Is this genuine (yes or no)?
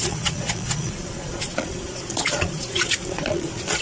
no